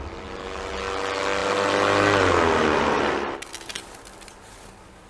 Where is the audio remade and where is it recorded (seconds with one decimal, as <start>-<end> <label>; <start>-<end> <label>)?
0.0-5.1 recorded